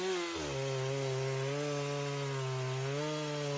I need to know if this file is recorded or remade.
recorded